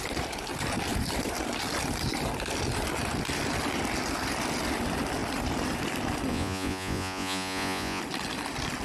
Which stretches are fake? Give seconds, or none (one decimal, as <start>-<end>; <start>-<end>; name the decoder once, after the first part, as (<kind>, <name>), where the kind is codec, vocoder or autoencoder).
6.3-8.0 (vocoder, Vocos)